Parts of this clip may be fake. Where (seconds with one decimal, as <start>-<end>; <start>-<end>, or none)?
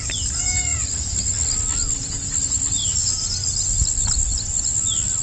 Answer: none